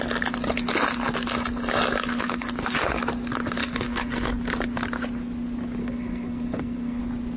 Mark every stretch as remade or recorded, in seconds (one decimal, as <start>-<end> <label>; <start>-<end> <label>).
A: 0.0-2.1 recorded; 2.1-3.0 remade; 3.0-3.6 recorded; 3.6-4.3 remade; 4.3-5.8 recorded; 5.8-7.0 remade; 7.0-7.4 recorded